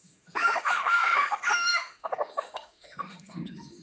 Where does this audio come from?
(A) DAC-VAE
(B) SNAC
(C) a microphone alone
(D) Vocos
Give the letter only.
A